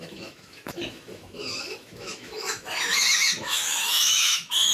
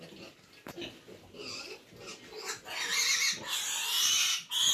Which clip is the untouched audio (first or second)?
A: second